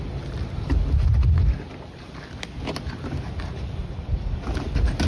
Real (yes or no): yes